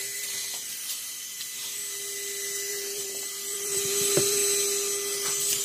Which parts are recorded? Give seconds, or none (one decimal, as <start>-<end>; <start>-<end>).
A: 1.8-2.7; 4.4-5.6